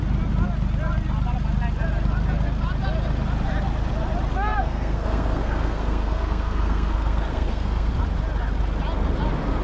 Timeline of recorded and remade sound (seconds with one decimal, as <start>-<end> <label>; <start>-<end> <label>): 0.0-4.3 recorded; 4.3-7.9 remade; 7.9-9.6 recorded